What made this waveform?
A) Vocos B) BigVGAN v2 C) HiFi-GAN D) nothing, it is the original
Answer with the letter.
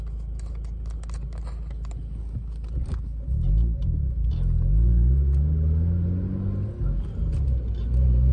D